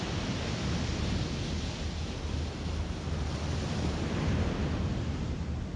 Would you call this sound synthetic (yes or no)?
no